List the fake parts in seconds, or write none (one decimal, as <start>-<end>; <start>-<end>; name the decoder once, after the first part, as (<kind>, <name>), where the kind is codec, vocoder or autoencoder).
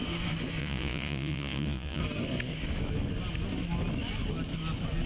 0.6-2.0 (vocoder, Vocos)